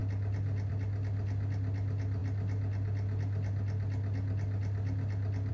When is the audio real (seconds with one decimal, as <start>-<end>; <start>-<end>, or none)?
0.0-5.5